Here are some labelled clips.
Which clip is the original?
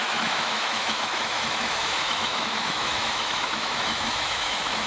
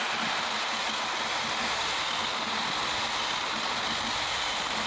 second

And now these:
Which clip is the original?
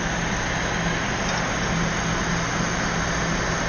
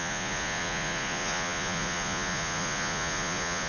first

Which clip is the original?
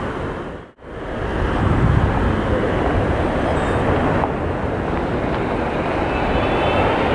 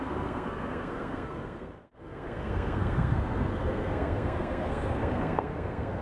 first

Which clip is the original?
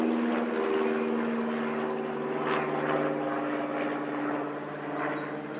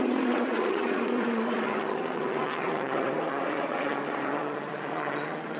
first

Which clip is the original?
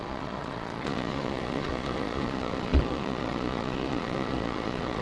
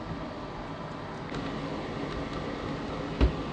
second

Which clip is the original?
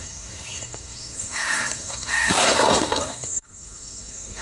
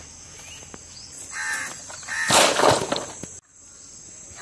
second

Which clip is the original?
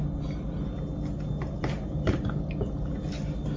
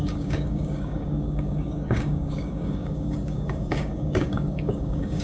first